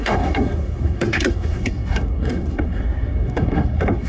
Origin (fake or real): fake